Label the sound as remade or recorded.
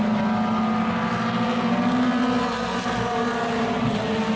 recorded